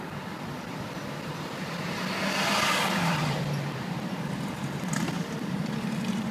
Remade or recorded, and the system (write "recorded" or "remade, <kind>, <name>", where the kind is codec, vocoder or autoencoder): remade, vocoder, BigVGAN v2